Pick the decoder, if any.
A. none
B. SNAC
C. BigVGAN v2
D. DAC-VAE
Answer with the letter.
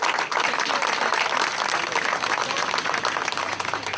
A